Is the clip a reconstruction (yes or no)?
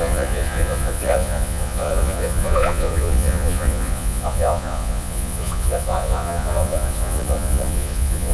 yes